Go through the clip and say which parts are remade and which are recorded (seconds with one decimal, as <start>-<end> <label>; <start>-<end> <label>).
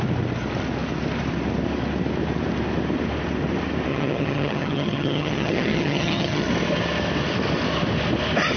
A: 0.0-3.9 recorded; 3.9-6.5 remade; 6.5-8.6 recorded